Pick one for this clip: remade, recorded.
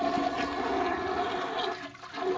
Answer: recorded